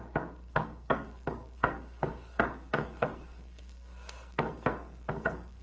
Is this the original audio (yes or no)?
no